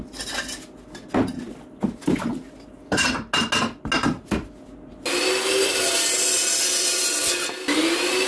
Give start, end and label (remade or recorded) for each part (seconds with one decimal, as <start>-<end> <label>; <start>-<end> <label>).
0.0-8.3 recorded